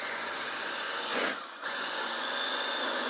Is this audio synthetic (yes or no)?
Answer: yes